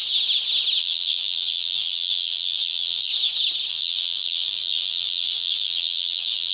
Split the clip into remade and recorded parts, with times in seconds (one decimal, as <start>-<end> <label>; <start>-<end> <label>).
0.0-0.8 recorded; 0.8-3.1 remade; 3.1-3.7 recorded; 3.7-6.5 remade